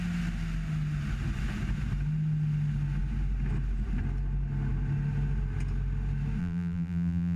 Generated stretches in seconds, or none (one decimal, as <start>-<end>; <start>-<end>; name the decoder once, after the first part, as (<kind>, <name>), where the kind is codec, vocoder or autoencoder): 6.4-7.4 (vocoder, BigVGAN v2)